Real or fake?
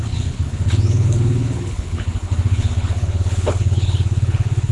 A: fake